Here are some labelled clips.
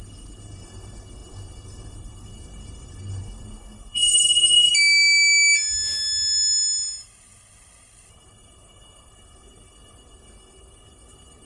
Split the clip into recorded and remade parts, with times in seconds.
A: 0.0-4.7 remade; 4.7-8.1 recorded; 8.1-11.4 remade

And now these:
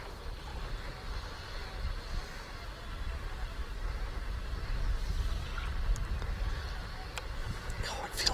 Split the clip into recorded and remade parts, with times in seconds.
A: 0.0-7.4 recorded; 7.4-8.3 remade

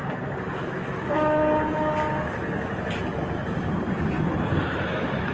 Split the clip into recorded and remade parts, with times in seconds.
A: 0.0-0.5 recorded; 0.5-1.4 remade; 1.4-4.6 recorded; 4.6-5.3 remade

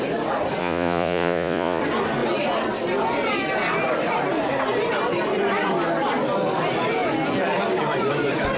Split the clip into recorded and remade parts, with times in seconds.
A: 0.0-0.6 recorded; 0.6-1.8 remade; 1.8-8.6 recorded

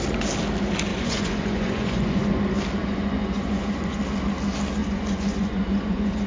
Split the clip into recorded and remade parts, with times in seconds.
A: 0.0-0.9 recorded; 0.9-2.4 remade; 2.4-2.8 recorded; 2.8-4.0 remade; 4.0-4.8 recorded; 4.8-6.3 remade